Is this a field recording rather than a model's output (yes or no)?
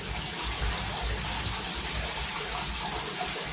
yes